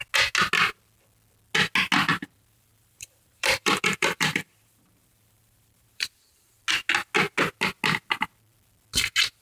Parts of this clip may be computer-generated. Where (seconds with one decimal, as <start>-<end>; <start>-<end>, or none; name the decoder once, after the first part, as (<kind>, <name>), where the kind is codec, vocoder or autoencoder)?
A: 2.1-6.6 (vocoder, BigVGAN v2)